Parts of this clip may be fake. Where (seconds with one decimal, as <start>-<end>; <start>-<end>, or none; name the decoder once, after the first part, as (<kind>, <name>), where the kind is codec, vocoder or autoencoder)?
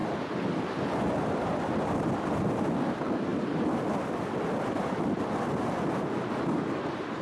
none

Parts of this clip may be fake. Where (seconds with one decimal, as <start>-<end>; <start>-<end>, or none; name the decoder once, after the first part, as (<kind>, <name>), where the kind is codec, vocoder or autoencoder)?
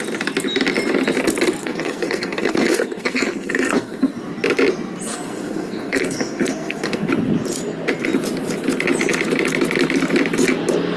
1.6-4.0 (codec, SNAC); 5.1-7.1